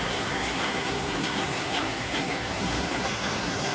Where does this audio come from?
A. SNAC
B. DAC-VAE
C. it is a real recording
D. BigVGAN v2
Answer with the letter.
A